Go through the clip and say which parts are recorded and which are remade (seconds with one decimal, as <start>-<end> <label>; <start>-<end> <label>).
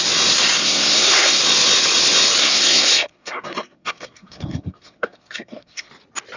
0.0-0.6 recorded; 0.6-1.4 remade; 1.4-2.4 recorded; 2.4-5.9 remade; 5.9-6.4 recorded